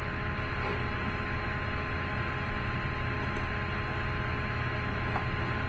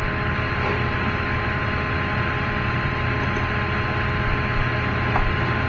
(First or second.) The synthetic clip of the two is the second